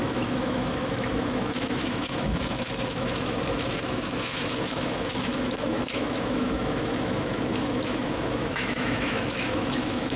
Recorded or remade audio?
remade